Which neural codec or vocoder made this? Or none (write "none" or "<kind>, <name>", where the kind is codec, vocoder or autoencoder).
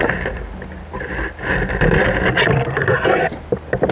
none